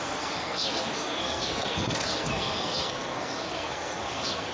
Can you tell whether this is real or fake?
fake